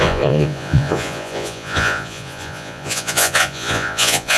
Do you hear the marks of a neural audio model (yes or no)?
yes